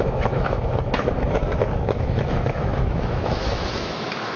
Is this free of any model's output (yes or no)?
no